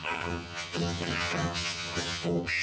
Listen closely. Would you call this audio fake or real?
fake